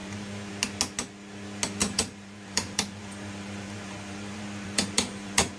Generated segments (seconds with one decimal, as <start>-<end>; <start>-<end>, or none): 0.0-0.5; 1.8-5.6

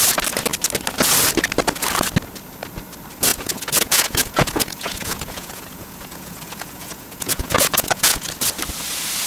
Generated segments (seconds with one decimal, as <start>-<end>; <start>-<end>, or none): 3.3-8.3